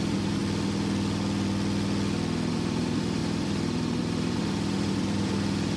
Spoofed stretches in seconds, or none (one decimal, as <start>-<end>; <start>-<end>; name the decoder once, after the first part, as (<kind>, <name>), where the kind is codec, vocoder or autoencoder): 0.0-0.4 (vocoder, BigVGAN v2); 2.5-5.8